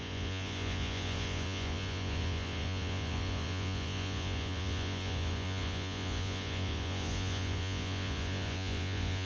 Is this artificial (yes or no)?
yes